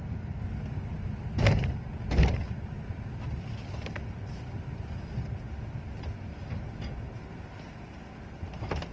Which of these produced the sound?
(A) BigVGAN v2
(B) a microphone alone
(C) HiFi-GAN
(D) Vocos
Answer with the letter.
B